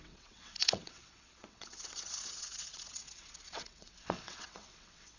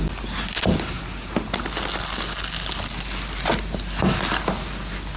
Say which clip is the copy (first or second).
first